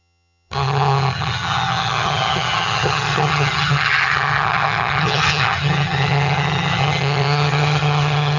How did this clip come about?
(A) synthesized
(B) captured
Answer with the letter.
A